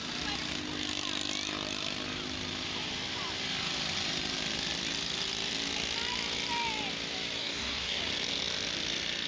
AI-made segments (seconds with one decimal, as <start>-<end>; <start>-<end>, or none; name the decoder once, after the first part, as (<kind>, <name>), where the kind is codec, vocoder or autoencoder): 7.4-8.0 (codec, DAC)